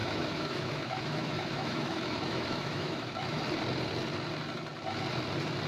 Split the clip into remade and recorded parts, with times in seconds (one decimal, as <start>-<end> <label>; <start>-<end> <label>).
0.0-3.4 remade; 3.4-5.7 recorded